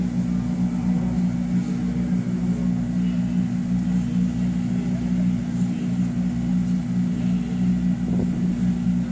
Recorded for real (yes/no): yes